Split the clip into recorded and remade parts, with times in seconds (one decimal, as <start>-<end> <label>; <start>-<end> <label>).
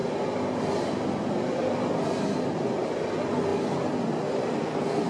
0.0-5.1 recorded